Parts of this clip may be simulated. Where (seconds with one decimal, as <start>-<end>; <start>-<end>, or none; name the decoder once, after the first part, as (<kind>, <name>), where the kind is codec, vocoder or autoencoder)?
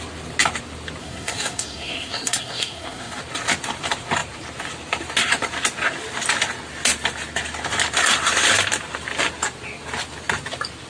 1.0-3.2 (codec, SNAC)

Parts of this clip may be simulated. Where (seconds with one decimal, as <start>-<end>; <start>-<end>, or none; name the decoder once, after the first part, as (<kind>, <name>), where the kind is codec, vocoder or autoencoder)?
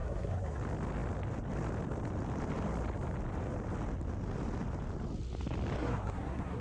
0.0-0.6 (codec, SNAC); 5.8-6.6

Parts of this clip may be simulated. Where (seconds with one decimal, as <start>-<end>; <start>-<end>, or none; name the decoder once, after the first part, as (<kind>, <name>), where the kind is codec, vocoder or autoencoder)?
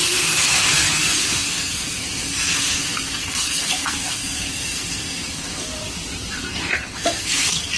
0.0-5.7 (codec, SNAC); 6.4-7.8